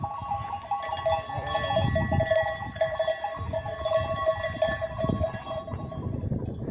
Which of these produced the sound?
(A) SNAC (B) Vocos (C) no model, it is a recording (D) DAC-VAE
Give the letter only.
C